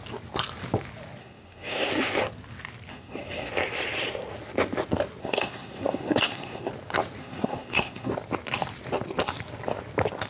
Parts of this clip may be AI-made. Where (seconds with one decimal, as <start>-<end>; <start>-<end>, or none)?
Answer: 1.2-1.9; 2.9-3.5; 5.2-6.7; 7.2-8.1